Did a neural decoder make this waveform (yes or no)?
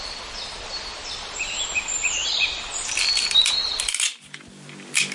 no